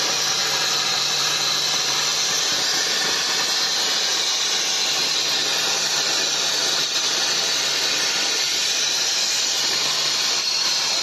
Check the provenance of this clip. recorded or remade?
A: remade